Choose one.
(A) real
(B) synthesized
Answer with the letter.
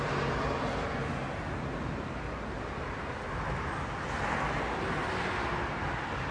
A